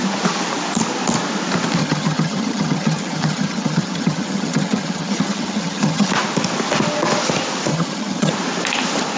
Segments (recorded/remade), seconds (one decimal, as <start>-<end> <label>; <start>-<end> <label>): 0.0-1.8 recorded; 1.8-6.1 remade; 6.1-7.7 recorded; 7.7-8.3 remade; 8.3-9.2 recorded